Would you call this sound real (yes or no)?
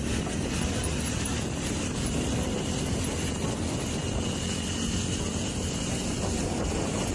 yes